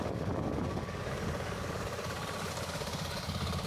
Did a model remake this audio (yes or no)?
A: yes